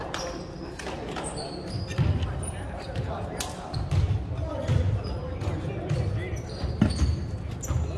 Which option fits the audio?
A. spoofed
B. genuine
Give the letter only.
B